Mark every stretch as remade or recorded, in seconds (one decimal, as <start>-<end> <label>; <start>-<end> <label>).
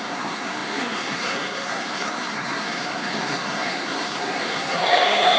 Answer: 0.0-5.4 remade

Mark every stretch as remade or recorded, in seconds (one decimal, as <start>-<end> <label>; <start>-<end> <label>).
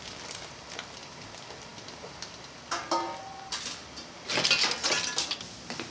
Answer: 0.0-5.9 recorded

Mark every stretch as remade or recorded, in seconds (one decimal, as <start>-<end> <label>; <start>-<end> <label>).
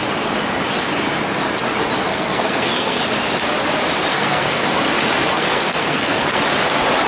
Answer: 0.0-2.1 recorded; 2.1-3.0 remade; 3.0-4.1 recorded; 4.1-4.8 remade; 4.8-5.3 recorded; 5.3-6.4 remade; 6.4-7.1 recorded